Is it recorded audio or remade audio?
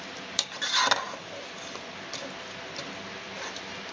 recorded